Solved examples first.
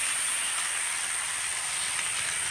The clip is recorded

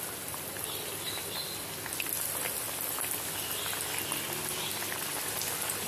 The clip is recorded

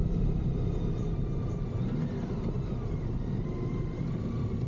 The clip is recorded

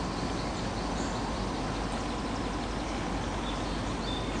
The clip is recorded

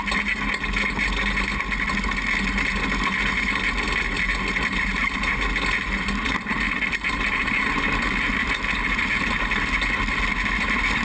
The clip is recorded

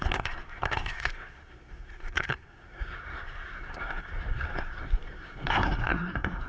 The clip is remade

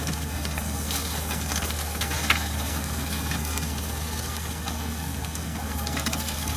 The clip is remade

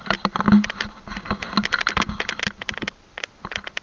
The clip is recorded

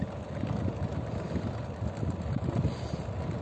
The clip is recorded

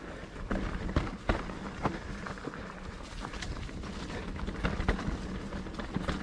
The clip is recorded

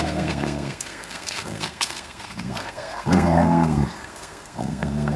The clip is remade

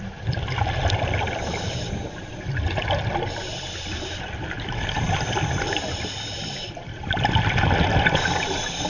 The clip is recorded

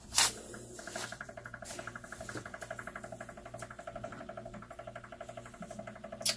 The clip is recorded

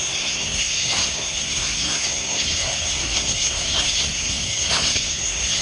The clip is remade